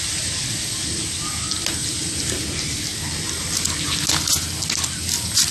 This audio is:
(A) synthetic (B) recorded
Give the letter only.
B